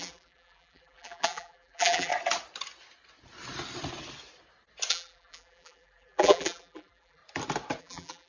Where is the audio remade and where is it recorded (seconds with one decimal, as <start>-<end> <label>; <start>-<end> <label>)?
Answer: 0.0-2.1 remade; 2.1-4.9 recorded; 4.9-7.2 remade; 7.2-7.8 recorded; 7.8-8.3 remade